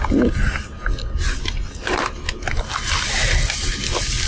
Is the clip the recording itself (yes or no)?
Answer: yes